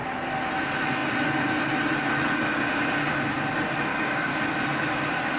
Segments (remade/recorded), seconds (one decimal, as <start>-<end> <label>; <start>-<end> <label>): 0.0-3.9 recorded; 3.9-4.4 remade; 4.4-5.4 recorded